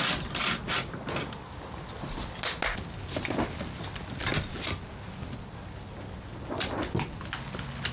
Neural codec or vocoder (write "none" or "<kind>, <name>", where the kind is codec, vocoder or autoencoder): none